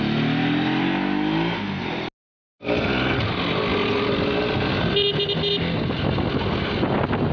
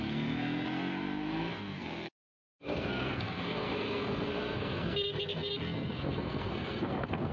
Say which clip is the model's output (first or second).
second